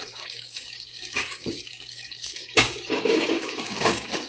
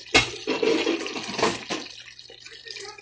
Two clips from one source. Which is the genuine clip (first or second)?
second